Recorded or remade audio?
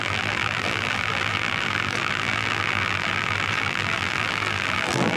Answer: remade